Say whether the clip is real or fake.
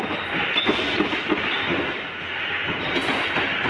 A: real